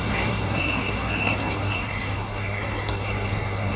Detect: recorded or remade remade